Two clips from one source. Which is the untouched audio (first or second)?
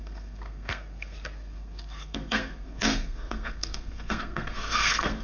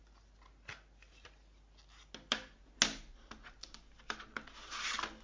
second